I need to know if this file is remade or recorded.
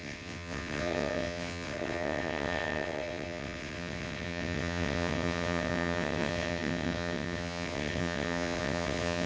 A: remade